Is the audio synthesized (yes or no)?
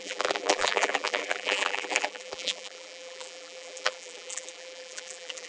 yes